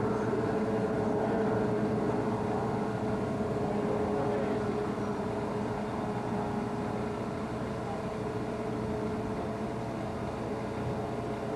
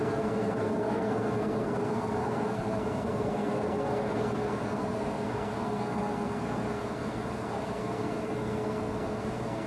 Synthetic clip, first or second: second